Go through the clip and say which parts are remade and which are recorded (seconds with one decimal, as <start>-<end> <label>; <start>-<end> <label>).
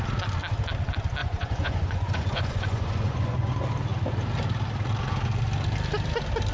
0.0-1.2 recorded; 1.2-3.5 remade; 3.5-6.5 recorded